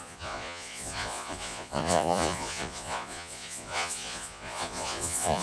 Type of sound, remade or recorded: remade